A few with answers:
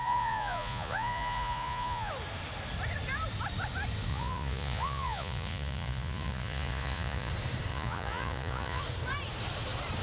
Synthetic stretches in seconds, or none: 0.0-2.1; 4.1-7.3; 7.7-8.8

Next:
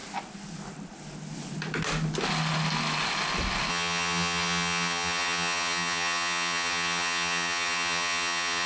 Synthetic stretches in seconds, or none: 3.7-8.7

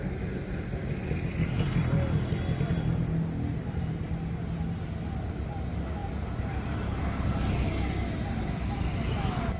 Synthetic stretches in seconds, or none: 6.0-7.0